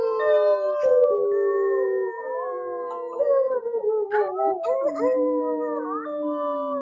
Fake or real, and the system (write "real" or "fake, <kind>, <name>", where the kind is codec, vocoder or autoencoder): real